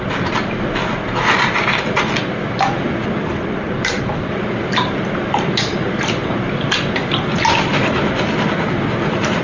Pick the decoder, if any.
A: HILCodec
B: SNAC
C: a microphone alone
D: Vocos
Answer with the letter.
C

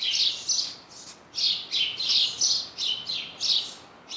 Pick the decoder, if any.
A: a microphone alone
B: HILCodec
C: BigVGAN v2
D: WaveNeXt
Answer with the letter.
A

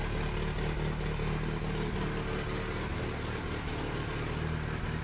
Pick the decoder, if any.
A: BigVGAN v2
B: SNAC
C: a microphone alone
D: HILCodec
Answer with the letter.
C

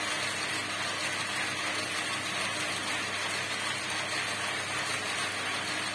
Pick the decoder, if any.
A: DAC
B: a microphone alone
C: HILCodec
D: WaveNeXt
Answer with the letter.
B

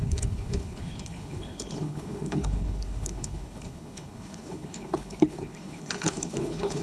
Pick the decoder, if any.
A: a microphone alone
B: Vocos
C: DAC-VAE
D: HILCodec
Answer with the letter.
D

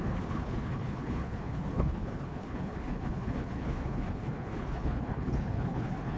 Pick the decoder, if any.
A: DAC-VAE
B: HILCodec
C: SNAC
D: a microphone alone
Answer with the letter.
B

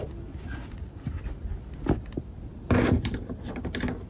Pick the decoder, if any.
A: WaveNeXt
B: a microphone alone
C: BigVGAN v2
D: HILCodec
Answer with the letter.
B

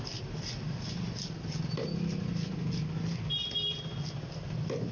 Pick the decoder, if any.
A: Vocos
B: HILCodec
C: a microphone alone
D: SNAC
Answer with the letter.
C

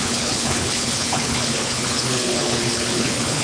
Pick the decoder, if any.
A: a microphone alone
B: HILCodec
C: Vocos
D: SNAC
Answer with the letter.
B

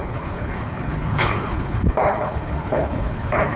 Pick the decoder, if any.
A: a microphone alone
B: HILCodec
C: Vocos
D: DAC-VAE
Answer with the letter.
B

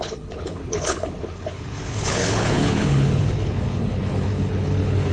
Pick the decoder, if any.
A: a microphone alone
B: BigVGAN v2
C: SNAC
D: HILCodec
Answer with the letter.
D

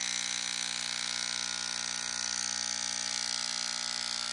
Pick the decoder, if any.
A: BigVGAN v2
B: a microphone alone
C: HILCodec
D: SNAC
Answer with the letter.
B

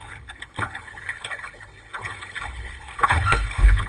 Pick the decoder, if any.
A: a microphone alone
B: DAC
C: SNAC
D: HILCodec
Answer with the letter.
D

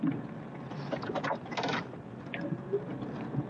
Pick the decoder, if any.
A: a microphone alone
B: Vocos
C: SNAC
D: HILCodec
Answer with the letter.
A